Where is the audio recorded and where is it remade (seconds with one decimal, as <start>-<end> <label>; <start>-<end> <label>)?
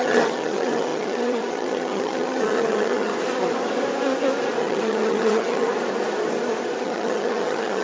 0.0-3.1 remade; 3.1-4.6 recorded; 4.6-5.7 remade; 5.7-6.8 recorded; 6.8-7.8 remade